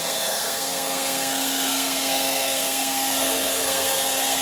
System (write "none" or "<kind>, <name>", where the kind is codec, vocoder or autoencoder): codec, SNAC